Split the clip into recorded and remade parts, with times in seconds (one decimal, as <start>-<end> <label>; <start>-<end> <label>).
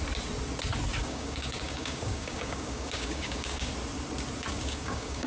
0.0-1.0 recorded; 1.0-3.7 remade; 3.7-4.5 recorded; 4.5-5.3 remade